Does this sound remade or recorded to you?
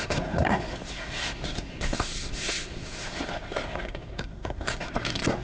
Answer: remade